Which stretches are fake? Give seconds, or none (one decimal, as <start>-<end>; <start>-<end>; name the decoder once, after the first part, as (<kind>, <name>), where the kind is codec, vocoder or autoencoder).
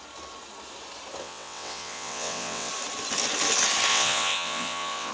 1.2-2.7 (vocoder, WaveNeXt); 3.9-5.1